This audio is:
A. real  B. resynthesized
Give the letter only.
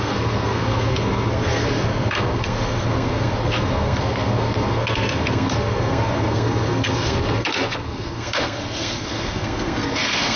B